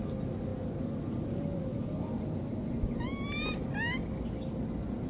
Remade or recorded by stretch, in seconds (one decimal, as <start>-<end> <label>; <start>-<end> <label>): 0.0-5.1 recorded